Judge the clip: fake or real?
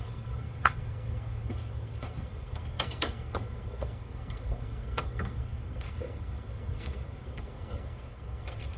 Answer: fake